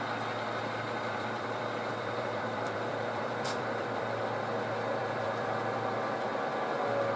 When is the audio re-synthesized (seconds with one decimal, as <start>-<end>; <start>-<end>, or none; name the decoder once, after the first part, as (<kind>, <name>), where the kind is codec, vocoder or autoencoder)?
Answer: 0.6-4.2 (vocoder, BigVGAN v2); 5.0-6.3